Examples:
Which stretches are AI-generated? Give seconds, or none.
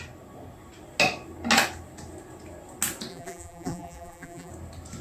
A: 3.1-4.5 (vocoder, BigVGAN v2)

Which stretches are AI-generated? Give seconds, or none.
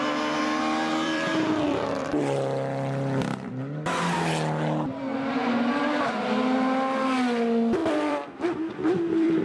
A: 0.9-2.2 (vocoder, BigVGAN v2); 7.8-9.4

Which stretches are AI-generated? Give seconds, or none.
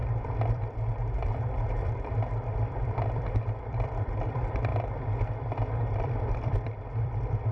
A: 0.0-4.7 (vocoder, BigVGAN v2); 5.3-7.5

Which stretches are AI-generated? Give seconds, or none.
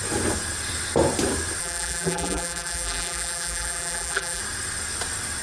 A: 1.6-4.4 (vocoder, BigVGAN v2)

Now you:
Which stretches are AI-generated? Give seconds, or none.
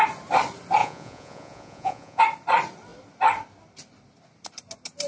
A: 0.8-2.2 (vocoder, Vocos)